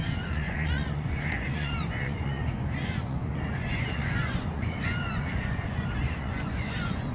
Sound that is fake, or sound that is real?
fake